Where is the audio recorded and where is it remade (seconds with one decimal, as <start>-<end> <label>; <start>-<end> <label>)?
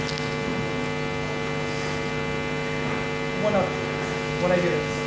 0.0-5.1 recorded